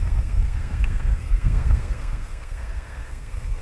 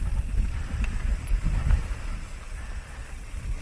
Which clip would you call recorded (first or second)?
second